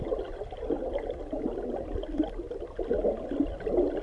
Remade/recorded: recorded